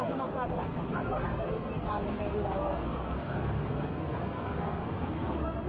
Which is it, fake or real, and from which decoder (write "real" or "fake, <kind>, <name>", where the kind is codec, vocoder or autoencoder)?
fake, codec, SNAC